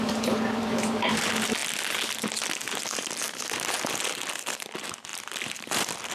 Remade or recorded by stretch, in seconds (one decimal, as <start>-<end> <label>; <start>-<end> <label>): 0.0-1.6 remade; 1.6-4.6 recorded; 4.6-6.1 remade